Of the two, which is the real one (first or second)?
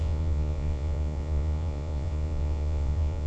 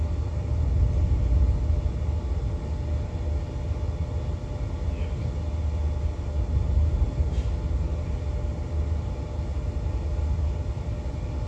second